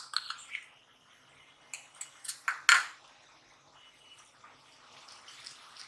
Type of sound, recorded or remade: recorded